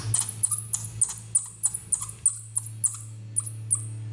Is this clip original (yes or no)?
yes